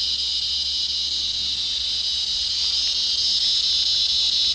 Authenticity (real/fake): real